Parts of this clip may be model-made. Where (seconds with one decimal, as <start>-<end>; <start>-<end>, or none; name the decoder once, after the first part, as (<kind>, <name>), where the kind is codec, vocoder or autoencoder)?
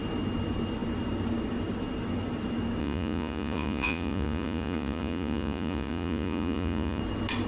2.8-7.0 (vocoder, Vocos)